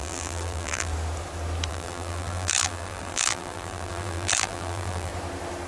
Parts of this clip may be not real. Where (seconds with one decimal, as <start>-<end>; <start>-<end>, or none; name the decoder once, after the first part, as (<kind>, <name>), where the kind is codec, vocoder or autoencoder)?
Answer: 0.0-0.9 (vocoder, BigVGAN v2); 1.7-5.1